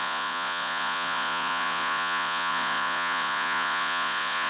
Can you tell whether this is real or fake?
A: fake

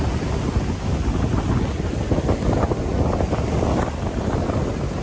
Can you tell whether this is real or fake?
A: real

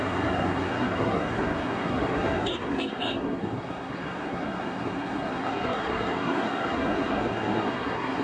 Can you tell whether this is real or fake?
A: fake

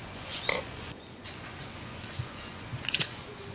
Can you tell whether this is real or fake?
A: fake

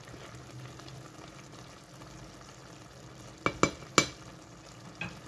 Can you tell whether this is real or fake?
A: real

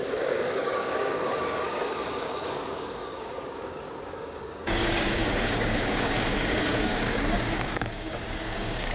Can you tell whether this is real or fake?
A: fake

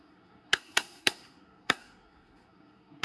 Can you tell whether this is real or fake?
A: fake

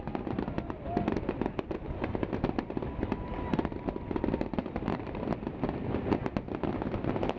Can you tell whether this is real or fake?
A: real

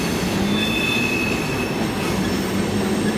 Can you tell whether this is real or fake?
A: real